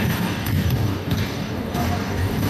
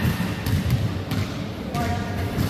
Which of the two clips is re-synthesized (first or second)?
first